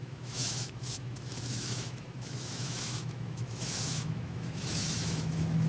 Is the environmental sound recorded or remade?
remade